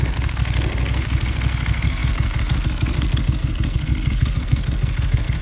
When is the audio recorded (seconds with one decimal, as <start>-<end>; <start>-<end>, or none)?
none